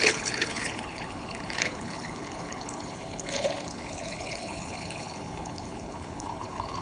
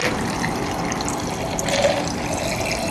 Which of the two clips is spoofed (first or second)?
first